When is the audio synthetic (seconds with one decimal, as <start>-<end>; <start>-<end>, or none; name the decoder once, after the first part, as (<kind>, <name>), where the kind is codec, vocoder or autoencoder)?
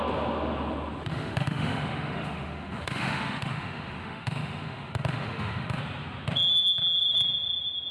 1.1-5.8 (autoencoder, DAC-VAE)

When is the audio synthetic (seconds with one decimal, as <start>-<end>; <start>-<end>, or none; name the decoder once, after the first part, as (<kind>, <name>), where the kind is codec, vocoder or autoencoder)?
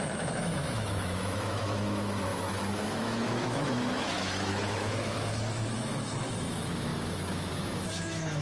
0.0-8.4 (autoencoder, DAC-VAE)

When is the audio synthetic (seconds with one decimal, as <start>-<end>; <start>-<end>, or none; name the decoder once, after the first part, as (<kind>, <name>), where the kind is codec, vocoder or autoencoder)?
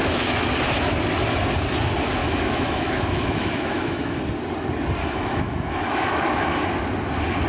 0.0-0.5 (autoencoder, DAC-VAE); 2.2-4.2; 5.0-6.6